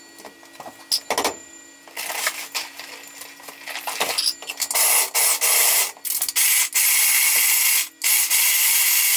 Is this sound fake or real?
real